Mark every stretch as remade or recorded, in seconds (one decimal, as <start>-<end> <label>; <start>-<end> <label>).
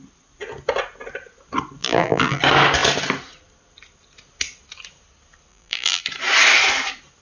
0.0-1.8 recorded; 1.8-2.4 remade; 2.4-5.5 recorded; 5.5-6.0 remade; 6.0-7.2 recorded